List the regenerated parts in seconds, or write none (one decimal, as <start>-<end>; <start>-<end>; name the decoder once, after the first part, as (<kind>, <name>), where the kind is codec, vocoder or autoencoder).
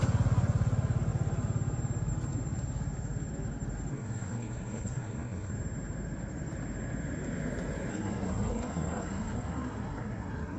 3.9-5.5 (codec, SNAC); 7.9-10.6